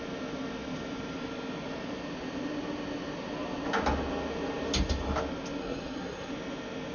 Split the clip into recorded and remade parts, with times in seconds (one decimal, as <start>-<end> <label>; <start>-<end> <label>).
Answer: 0.0-5.6 recorded; 5.6-6.3 remade; 6.3-6.9 recorded